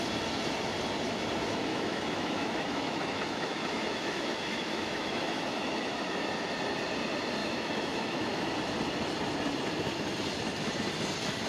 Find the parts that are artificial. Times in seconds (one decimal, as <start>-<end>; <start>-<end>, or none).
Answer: 1.7-6.5; 7.4-8.5